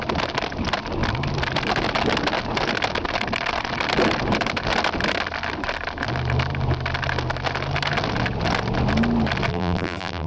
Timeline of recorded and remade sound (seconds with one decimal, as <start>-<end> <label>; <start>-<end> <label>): 0.0-9.5 recorded; 9.5-10.3 remade